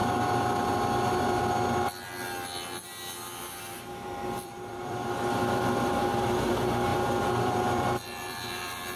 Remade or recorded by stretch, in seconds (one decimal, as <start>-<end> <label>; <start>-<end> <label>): 0.0-3.6 recorded; 3.6-9.0 remade